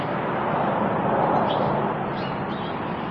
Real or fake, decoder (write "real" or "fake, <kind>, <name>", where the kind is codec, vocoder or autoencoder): real